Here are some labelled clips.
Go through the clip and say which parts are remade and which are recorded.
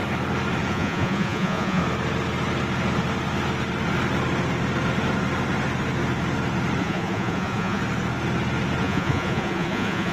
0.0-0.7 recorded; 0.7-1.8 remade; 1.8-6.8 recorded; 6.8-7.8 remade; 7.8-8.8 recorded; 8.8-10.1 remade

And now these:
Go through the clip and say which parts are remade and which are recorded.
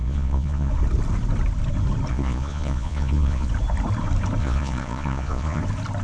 0.0-0.7 remade; 0.7-2.1 recorded; 2.1-3.5 remade; 3.5-4.4 recorded; 4.4-5.6 remade; 5.6-6.0 recorded